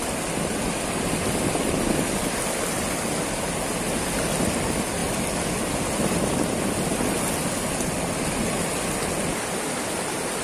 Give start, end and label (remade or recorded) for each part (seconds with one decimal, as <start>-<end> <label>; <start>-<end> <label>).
0.0-10.4 recorded